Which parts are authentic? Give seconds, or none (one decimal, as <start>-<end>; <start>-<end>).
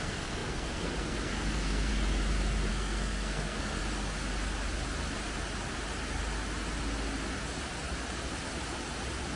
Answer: 1.9-2.7; 3.8-9.4